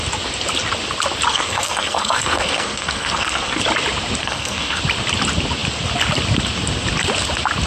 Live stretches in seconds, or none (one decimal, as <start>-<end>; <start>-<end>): 0.0-1.3; 3.6-4.2; 4.8-7.7